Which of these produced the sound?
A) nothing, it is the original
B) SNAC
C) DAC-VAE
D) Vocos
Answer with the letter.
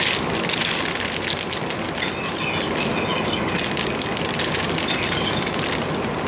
A